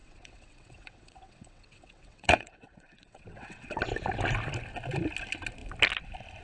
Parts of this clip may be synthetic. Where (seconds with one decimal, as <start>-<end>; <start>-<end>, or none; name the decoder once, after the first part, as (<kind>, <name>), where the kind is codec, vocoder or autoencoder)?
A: 0.0-3.8 (vocoder, WaveNeXt)